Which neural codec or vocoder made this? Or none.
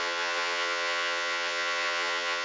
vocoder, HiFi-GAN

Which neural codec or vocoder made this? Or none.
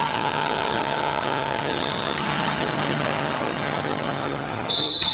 vocoder, HiFi-GAN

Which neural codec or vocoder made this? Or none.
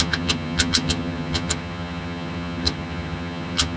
vocoder, HiFi-GAN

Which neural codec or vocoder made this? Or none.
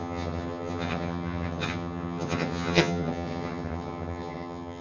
vocoder, HiFi-GAN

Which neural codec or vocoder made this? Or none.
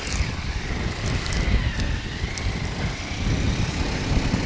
none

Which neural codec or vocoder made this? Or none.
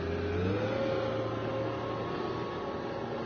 none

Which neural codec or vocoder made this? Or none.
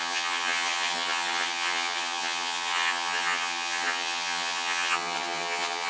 vocoder, HiFi-GAN